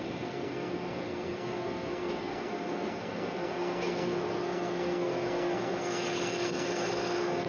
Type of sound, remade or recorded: remade